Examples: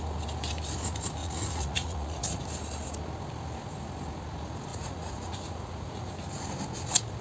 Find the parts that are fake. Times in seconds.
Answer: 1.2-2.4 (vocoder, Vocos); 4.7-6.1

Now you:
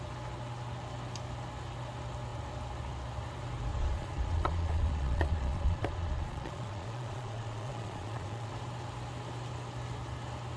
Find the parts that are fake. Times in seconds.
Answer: 3.7-8.5 (vocoder, Vocos)

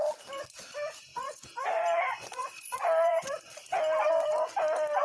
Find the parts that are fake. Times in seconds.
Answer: 1.1-3.3 (vocoder, Vocos)